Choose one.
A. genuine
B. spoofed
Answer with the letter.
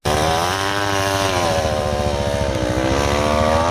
A